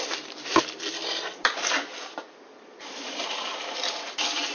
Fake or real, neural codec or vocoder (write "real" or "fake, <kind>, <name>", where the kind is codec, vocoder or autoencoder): fake, vocoder, BigVGAN v2